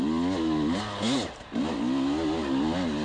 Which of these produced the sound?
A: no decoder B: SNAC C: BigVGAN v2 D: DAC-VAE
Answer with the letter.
A